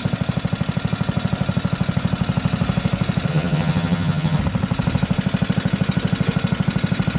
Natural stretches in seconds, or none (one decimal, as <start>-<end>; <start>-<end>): 0.0-3.3; 4.4-7.2